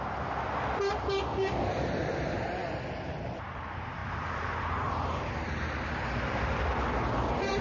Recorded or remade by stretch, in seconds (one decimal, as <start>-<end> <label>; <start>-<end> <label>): 0.0-4.0 recorded; 4.0-4.9 remade; 4.9-7.6 recorded